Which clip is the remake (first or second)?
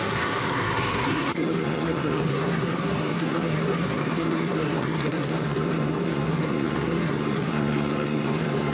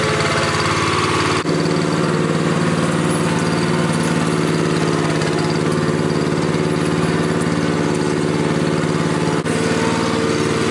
first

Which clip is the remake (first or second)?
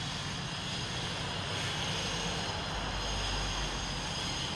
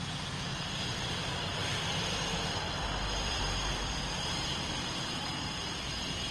second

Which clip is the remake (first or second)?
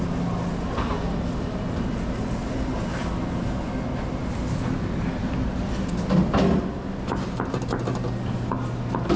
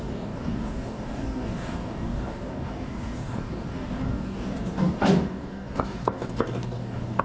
second